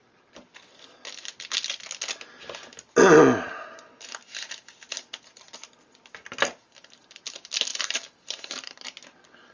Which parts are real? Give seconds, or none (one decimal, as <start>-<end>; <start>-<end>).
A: 0.0-7.7; 8.8-9.5